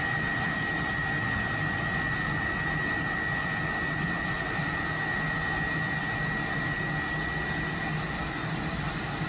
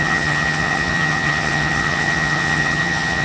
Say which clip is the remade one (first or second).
second